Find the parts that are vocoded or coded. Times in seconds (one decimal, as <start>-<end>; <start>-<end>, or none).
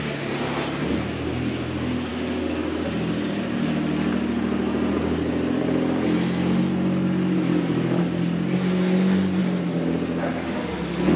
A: 2.1-3.1